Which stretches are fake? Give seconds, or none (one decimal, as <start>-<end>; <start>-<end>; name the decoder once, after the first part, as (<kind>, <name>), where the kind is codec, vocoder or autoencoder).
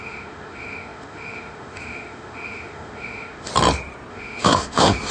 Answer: 0.0-3.5 (autoencoder, DAC-VAE); 4.1-5.1